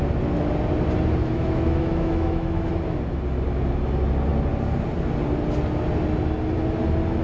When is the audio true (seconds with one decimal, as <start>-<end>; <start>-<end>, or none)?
0.0-1.2; 2.7-7.2